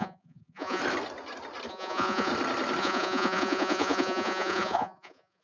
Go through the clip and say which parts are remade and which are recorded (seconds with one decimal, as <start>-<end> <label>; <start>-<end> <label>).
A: 0.0-0.8 remade; 0.8-1.7 recorded; 1.7-2.3 remade; 2.3-2.8 recorded; 2.8-5.4 remade